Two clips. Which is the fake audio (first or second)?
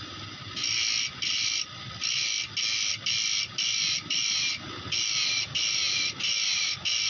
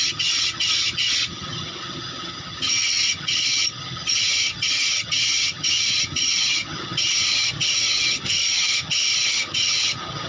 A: second